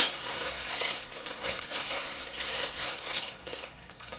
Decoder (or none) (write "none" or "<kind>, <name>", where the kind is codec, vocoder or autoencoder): codec, SNAC